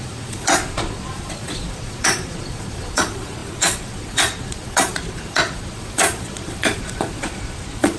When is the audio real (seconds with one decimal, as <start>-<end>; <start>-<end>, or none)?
none